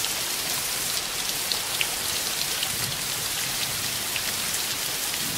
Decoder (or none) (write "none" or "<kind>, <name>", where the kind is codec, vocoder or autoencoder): none